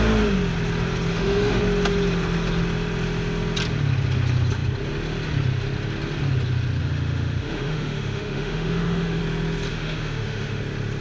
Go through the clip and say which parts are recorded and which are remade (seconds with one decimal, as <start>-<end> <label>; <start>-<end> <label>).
0.0-1.1 recorded; 1.1-1.6 remade; 1.6-6.8 recorded; 6.8-9.2 remade; 9.2-9.7 recorded; 9.7-10.6 remade; 10.6-11.0 recorded